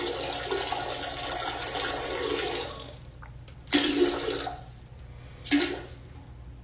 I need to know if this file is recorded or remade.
recorded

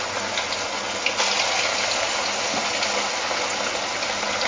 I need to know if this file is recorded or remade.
recorded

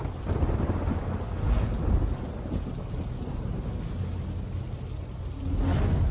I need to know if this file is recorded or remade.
recorded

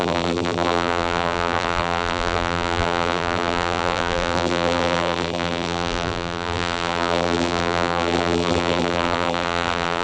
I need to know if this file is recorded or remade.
remade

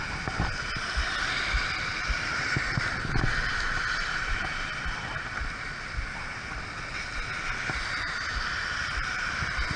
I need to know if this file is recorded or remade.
recorded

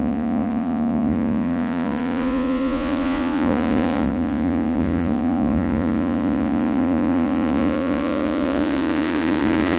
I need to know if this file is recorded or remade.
remade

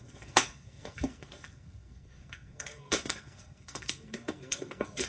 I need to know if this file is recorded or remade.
remade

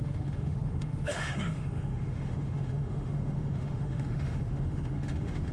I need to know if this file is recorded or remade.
remade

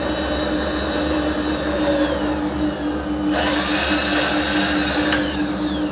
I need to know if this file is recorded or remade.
recorded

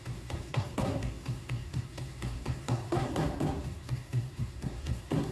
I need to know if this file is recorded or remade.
remade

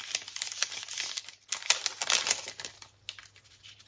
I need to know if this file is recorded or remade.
recorded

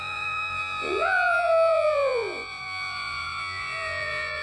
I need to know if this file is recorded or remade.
remade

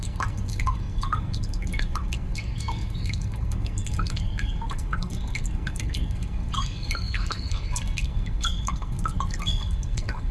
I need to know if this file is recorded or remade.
remade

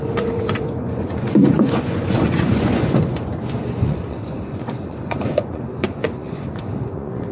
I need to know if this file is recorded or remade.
remade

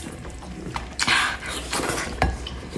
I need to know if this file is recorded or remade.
remade